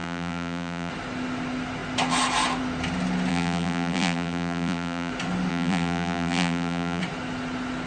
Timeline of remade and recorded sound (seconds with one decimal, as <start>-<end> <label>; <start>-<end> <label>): 0.0-0.9 remade; 0.9-3.3 recorded; 3.3-5.1 remade; 5.1-5.5 recorded; 5.5-7.0 remade; 7.0-7.9 recorded